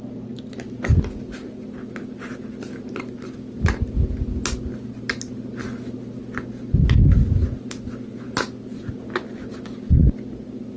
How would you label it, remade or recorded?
recorded